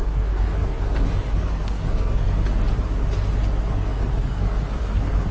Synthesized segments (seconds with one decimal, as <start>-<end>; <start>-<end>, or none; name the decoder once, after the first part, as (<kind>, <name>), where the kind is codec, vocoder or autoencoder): 0.0-2.3 (codec, SNAC); 3.7-5.3